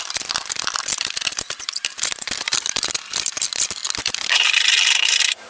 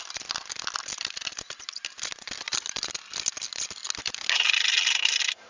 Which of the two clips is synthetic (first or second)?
first